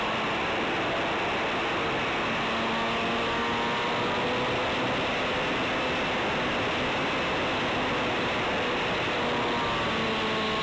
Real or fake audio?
real